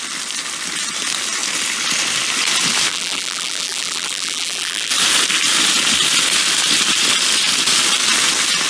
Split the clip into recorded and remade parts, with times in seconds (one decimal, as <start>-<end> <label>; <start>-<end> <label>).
0.0-2.9 recorded; 2.9-4.9 remade; 4.9-8.7 recorded